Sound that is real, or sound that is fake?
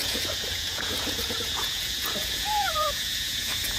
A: fake